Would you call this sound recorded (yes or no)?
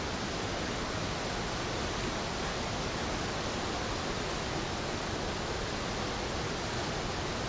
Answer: yes